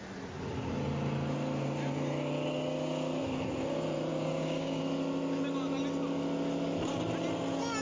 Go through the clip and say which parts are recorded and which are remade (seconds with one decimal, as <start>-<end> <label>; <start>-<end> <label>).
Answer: 0.0-4.1 recorded; 4.1-4.8 remade; 4.8-7.8 recorded